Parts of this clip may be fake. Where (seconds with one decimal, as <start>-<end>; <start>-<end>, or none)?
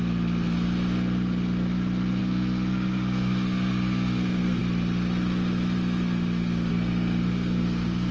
2.2-4.6; 6.7-8.1